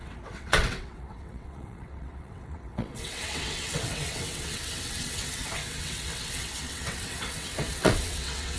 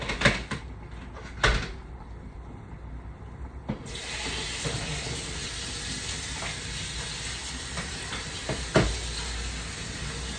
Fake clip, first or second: first